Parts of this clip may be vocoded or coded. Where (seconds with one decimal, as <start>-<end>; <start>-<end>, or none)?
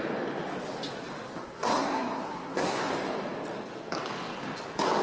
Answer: 1.4-2.9